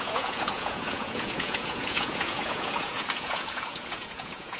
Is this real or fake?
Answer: fake